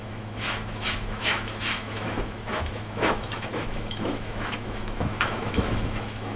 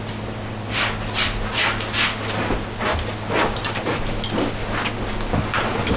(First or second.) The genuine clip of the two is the second